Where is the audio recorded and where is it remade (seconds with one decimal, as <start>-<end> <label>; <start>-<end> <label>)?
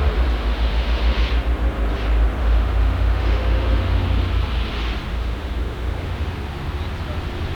0.0-0.4 recorded; 0.4-1.2 remade; 1.2-2.4 recorded; 2.4-4.0 remade; 4.0-5.1 recorded; 5.1-6.3 remade; 6.3-7.5 recorded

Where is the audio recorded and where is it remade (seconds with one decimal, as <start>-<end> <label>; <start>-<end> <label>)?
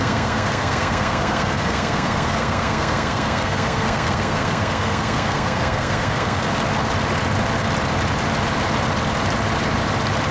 0.0-6.5 remade; 6.5-10.3 recorded